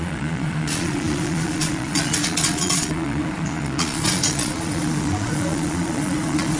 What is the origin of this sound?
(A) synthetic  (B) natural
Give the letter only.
A